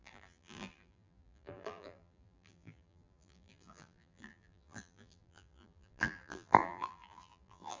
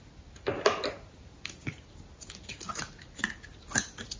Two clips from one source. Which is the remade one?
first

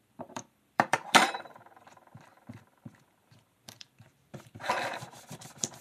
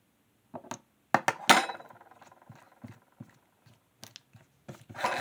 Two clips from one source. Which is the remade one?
first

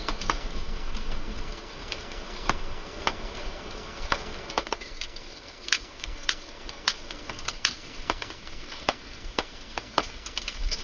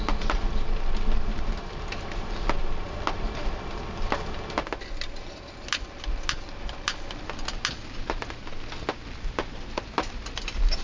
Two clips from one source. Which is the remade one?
first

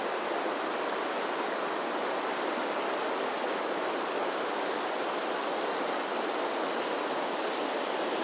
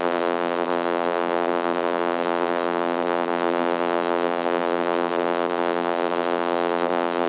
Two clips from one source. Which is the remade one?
second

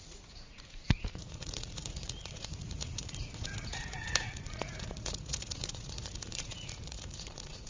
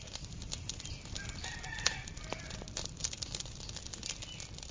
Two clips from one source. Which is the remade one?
first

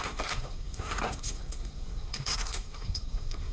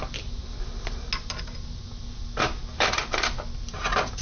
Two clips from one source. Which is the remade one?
first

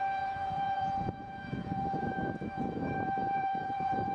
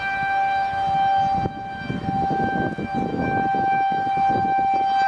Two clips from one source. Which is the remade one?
first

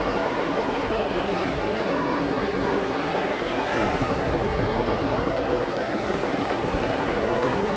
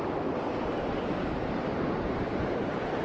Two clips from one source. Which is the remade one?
first